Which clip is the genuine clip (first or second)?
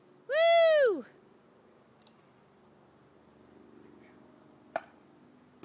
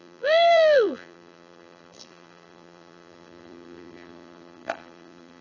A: first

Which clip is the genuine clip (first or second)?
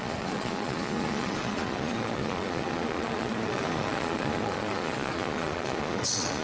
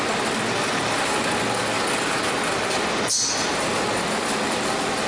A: second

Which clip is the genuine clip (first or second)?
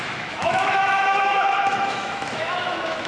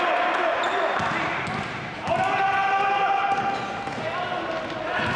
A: second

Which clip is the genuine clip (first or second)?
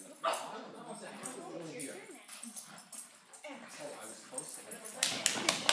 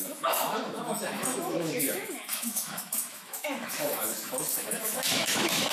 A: first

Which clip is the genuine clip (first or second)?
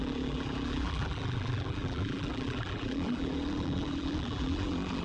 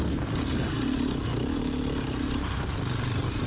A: second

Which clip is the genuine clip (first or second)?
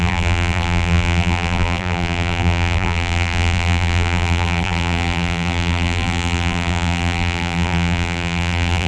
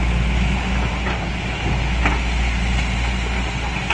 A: second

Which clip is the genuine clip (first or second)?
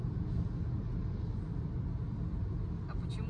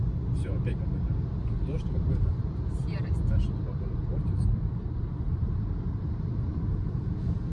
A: first